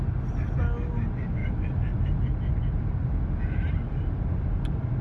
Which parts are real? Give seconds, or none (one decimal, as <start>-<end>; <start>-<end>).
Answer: 0.0-5.0